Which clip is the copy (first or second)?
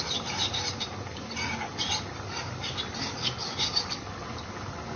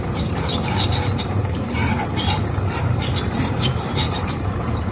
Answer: second